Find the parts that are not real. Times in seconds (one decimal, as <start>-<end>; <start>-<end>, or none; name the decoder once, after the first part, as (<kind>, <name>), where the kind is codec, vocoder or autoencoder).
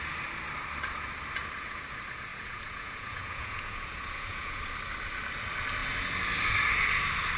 2.3-4.6 (vocoder, Vocos)